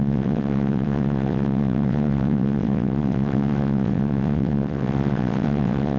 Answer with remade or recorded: remade